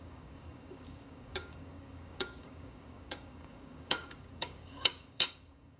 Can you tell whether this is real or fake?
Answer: fake